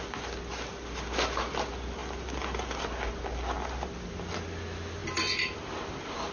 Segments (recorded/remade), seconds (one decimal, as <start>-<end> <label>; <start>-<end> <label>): 0.0-6.3 recorded